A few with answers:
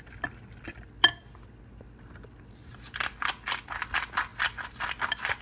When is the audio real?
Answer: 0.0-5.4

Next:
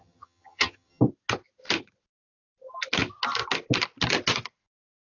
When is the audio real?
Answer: 1.0-5.1